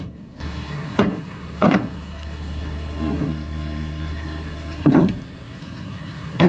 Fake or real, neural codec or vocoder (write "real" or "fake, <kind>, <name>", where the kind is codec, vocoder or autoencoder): fake, codec, SNAC